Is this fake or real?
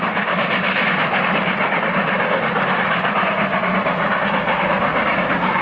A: real